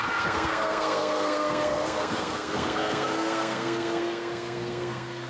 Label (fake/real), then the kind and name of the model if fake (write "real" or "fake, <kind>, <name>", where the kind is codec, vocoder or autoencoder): fake, codec, SNAC